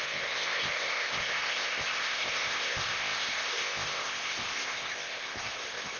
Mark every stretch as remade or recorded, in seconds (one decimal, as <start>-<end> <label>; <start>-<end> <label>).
0.0-6.0 remade